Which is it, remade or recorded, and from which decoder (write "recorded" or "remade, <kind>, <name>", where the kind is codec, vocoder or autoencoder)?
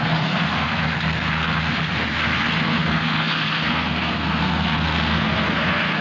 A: remade, codec, SNAC